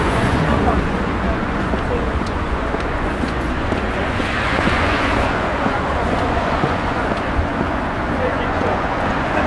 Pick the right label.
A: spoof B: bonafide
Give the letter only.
A